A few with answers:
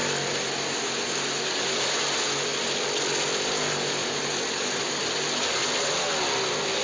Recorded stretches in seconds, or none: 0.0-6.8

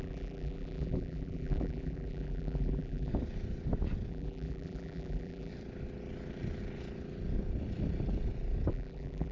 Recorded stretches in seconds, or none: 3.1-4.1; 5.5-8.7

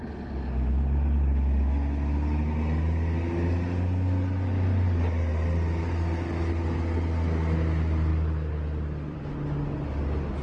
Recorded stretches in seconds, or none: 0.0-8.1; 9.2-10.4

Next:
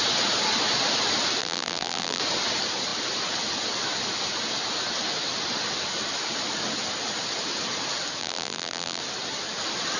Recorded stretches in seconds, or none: 0.0-1.4; 2.2-8.2; 9.0-10.0

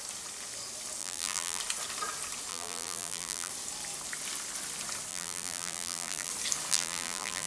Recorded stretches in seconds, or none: 0.0-1.0; 1.6-2.5; 3.5-5.1; 6.3-6.7